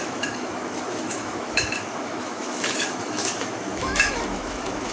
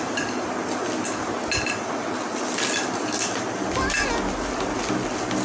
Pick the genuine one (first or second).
second